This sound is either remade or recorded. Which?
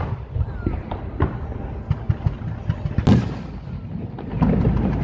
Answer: recorded